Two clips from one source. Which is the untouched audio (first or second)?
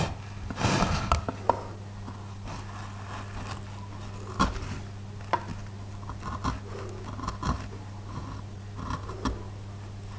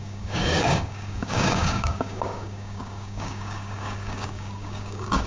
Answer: first